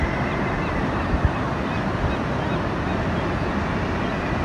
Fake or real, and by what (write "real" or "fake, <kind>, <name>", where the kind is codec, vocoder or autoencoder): real